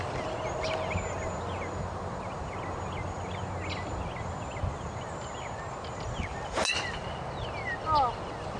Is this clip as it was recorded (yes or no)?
yes